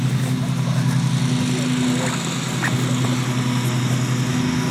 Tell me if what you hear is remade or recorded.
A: recorded